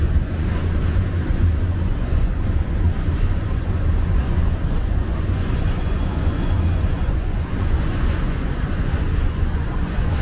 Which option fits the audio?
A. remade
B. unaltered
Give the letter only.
A